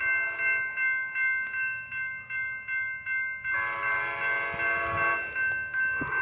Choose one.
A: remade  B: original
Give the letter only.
B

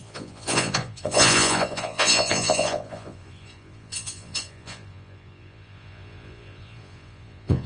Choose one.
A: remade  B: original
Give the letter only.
A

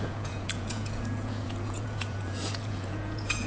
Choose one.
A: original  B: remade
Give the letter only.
B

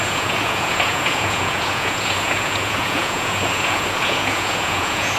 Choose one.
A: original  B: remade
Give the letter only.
B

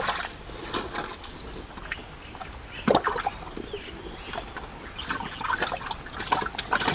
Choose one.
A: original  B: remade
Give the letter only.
A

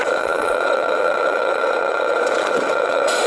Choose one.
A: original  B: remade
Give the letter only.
B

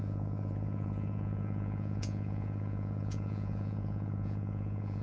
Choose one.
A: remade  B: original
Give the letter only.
A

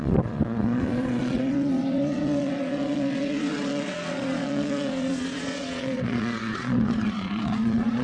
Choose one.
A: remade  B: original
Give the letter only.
A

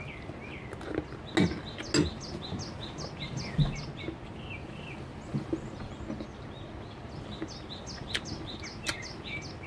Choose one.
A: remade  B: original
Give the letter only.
B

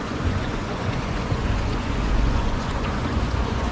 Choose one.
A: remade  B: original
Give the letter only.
A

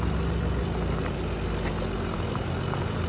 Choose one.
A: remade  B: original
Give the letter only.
B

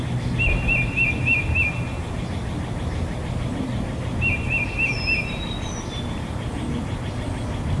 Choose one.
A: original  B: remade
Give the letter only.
A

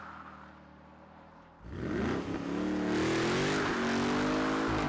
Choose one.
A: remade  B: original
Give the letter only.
B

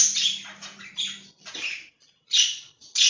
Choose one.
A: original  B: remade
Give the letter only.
A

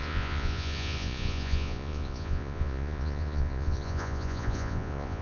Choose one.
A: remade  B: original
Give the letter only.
A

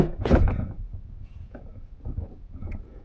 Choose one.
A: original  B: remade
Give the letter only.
B